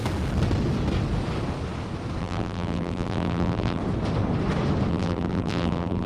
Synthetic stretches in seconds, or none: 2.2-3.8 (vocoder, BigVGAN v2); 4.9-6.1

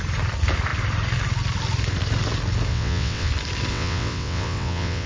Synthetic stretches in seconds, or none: 2.7-3.3 (vocoder, WaveNeXt); 3.7-5.1

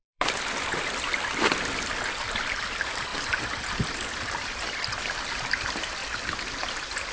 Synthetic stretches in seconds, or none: 0.0-4.6 (vocoder, BigVGAN v2); 5.3-6.0

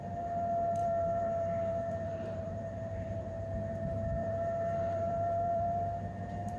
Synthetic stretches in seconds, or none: 0.8-3.3 (vocoder, BigVGAN v2); 4.2-6.0

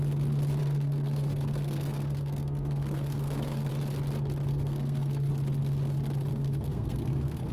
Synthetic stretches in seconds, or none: 0.6-3.7 (codec, SNAC); 4.5-5.3; 6.3-7.5

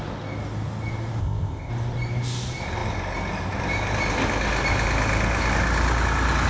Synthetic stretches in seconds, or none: 1.2-1.7 (codec, ZipCodec)

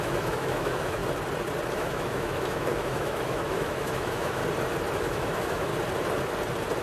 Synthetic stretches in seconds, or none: 0.0-1.0 (autoencoder, DAC-VAE); 1.7-4.4; 5.0-5.7